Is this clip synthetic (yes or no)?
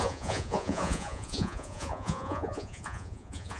yes